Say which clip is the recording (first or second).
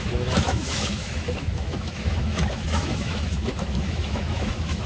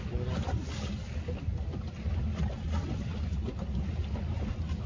second